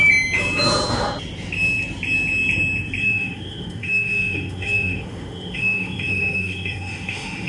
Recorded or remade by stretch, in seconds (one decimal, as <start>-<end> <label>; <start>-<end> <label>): 0.0-3.0 recorded; 3.0-7.5 remade